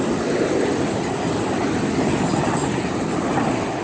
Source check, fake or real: real